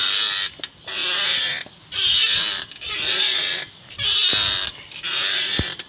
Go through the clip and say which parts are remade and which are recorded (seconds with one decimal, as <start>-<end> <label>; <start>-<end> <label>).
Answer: 0.0-5.9 recorded